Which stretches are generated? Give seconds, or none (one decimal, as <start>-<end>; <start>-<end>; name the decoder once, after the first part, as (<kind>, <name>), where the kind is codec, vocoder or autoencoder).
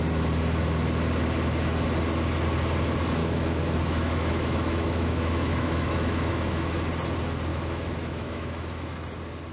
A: 3.2-6.9 (autoencoder, DAC-VAE); 7.5-8.9